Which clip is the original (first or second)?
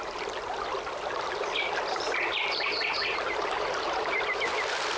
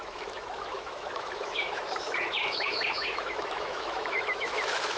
first